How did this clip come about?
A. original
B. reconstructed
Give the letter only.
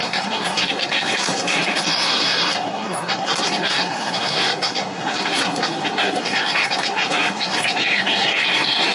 B